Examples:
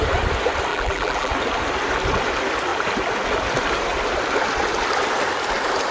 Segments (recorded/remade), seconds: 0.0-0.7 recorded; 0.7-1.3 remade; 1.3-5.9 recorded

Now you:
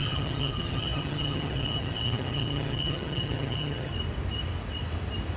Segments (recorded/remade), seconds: 0.0-3.9 remade; 3.9-5.4 recorded